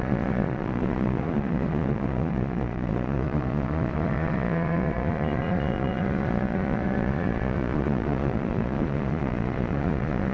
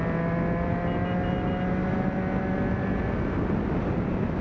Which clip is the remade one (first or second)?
first